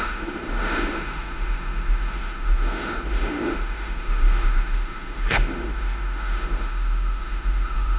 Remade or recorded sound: remade